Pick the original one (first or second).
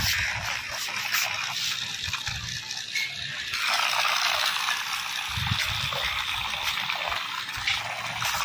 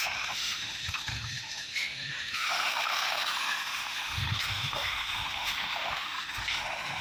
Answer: first